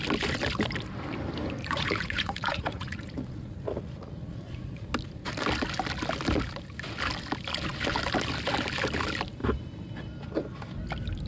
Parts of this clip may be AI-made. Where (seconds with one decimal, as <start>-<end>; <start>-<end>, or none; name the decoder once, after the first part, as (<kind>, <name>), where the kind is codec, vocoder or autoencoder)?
1.6-4.9 (vocoder, Vocos)